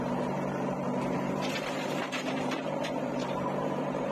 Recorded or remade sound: remade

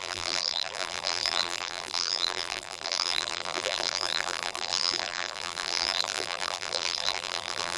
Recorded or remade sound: remade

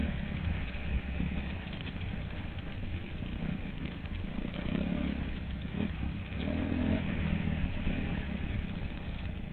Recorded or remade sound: remade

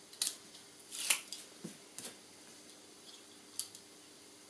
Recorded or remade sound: recorded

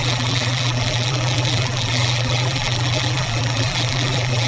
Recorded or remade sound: remade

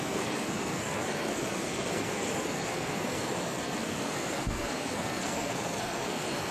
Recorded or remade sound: remade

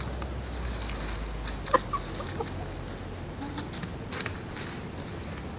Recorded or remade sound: recorded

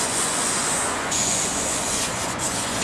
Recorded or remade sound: remade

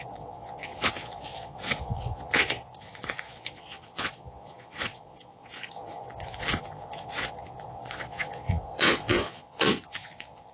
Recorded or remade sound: remade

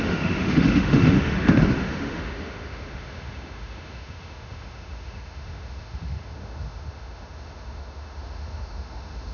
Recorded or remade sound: remade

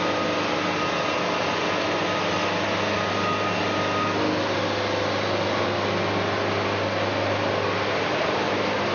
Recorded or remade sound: recorded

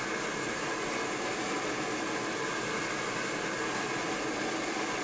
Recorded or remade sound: recorded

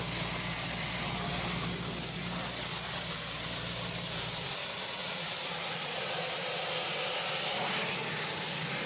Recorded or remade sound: recorded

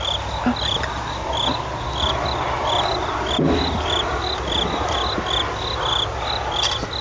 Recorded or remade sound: recorded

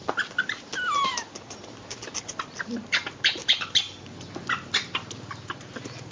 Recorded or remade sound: recorded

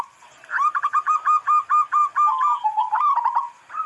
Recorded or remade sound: recorded